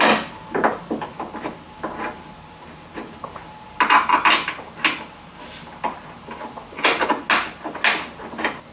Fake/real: real